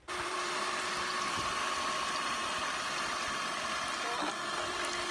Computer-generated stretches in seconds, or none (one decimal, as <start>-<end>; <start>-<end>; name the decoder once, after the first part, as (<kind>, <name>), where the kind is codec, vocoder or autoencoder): 0.0-5.1 (vocoder, BigVGAN v2)